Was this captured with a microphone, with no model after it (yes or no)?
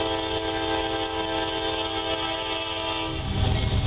yes